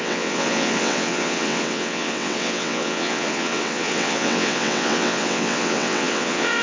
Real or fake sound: fake